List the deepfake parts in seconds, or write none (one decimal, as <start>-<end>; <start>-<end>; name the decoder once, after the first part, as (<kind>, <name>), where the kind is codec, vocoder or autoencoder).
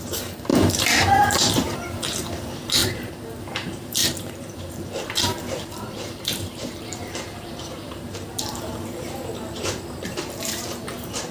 0.0-2.8 (vocoder, BigVGAN v2); 3.4-11.3